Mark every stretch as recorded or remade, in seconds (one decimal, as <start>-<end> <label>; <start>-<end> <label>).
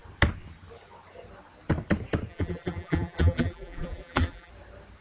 0.0-2.3 recorded; 2.3-4.5 remade; 4.5-5.0 recorded